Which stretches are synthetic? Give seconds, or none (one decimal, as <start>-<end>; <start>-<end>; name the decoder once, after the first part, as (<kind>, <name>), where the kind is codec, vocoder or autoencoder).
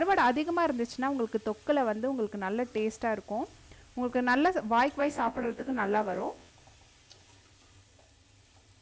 5.0-6.5 (vocoder, WaveNeXt)